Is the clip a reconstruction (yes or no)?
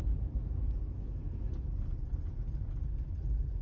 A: no